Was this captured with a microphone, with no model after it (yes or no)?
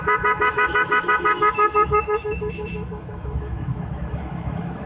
no